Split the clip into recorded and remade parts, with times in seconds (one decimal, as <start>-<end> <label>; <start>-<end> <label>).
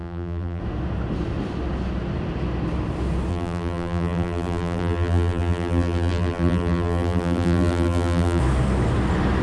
0.0-0.6 remade; 0.6-3.3 recorded; 3.3-8.4 remade; 8.4-9.4 recorded